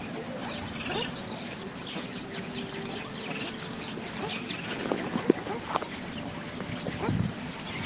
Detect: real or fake real